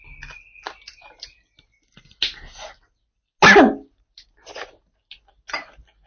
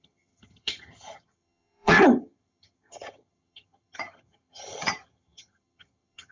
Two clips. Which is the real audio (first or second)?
first